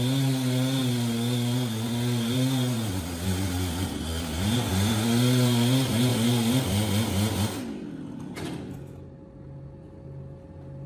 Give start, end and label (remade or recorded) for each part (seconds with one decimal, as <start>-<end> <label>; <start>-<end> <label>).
0.0-10.9 recorded